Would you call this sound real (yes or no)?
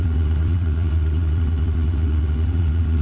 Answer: no